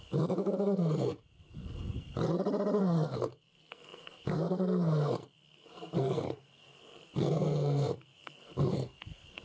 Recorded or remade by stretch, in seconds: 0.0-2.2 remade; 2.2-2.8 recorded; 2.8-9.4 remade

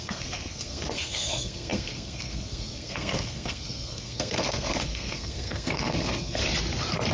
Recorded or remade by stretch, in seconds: 0.0-6.4 remade; 6.4-7.1 recorded

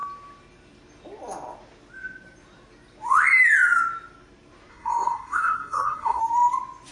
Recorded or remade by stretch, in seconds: 0.0-4.7 recorded; 4.7-6.2 remade; 6.2-6.9 recorded

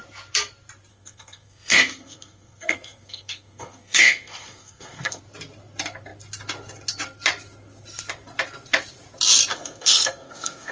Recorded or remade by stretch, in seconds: 0.0-0.9 recorded; 0.9-5.2 remade; 5.2-9.5 recorded; 9.5-10.7 remade

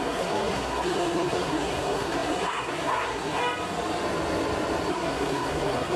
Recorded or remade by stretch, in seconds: 0.0-3.4 remade; 3.4-4.9 recorded; 4.9-6.0 remade

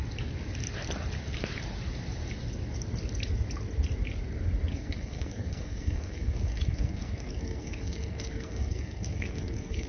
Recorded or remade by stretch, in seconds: 0.0-4.7 recorded; 4.7-9.9 remade